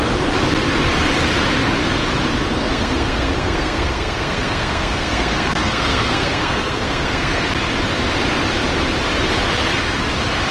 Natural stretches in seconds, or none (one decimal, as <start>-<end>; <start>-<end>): 0.0-2.5; 7.4-10.5